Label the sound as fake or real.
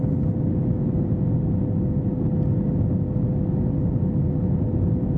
real